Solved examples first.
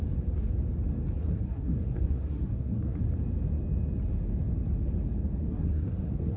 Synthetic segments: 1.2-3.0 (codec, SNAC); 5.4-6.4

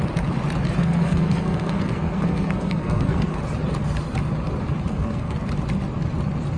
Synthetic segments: 0.8-3.4 (codec, SNAC); 4.9-5.5

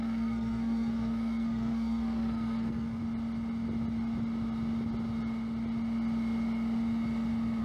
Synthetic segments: 0.0-3.0 (codec, SNAC)

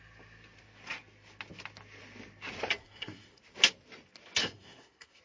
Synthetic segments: 2.8-3.4 (codec, SNAC); 4.4-5.2

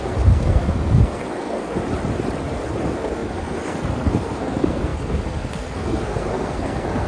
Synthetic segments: 0.0-1.8 (codec, SNAC); 2.8-7.1

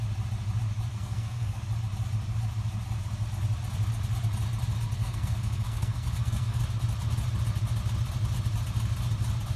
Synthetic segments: 0.9-1.6 (codec, SNAC); 5.0-6.6